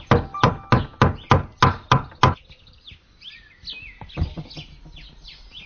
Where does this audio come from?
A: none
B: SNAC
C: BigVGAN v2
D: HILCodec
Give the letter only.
A